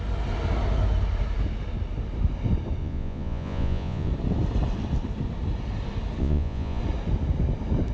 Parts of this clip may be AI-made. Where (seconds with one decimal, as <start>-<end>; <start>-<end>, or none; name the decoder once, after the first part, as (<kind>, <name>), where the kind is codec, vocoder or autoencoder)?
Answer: 2.8-4.1 (vocoder, Vocos); 6.2-6.8